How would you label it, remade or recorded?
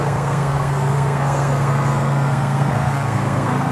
remade